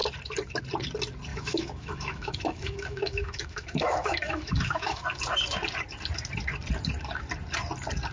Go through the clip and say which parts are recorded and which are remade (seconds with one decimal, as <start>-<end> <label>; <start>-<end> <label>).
0.0-1.3 recorded; 1.3-5.0 remade; 5.0-8.1 recorded